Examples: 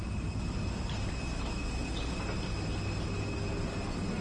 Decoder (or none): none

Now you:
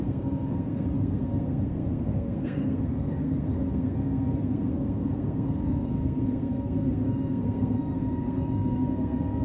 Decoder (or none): codec, SNAC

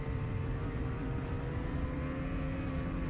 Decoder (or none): none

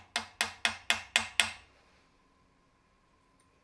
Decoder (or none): none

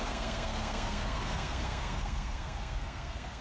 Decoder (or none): codec, SNAC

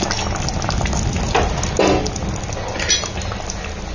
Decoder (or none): none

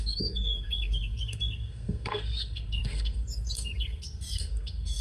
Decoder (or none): codec, SNAC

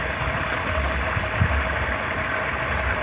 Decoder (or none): none